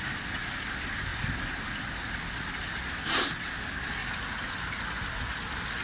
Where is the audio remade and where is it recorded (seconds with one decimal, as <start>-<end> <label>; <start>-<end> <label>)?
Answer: 0.0-5.8 recorded